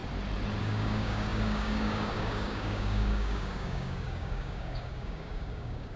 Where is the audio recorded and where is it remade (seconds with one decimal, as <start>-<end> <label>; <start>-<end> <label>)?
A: 0.0-0.6 recorded; 0.6-6.0 remade